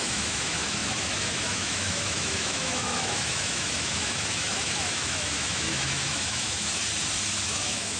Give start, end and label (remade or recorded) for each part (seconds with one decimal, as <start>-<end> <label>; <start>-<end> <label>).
0.0-6.8 remade; 6.8-7.4 recorded; 7.4-8.0 remade